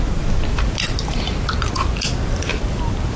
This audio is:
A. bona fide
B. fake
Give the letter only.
A